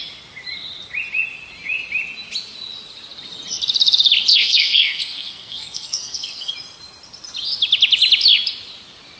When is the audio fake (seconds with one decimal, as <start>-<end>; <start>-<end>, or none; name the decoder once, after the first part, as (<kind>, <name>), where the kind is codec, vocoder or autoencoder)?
4.3-6.5 (codec, SNAC)